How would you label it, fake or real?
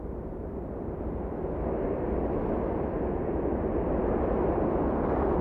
real